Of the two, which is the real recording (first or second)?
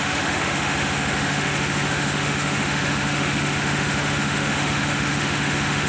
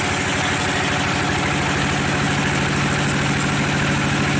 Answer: second